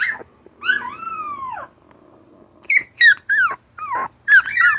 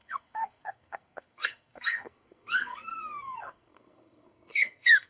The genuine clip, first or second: first